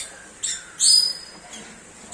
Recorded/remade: recorded